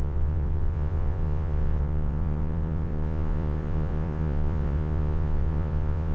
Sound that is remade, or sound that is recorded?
remade